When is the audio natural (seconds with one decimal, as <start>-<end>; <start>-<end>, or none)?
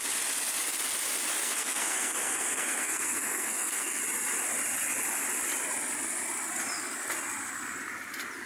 0.0-1.4; 4.0-8.5